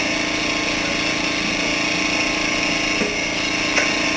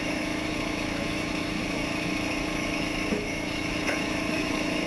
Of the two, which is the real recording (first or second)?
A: first